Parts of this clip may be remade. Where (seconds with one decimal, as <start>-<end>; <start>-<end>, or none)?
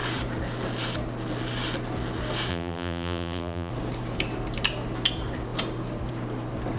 2.5-3.7